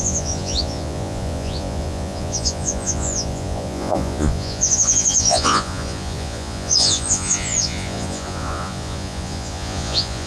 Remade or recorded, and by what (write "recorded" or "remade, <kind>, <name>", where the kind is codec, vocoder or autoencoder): remade, vocoder, Vocos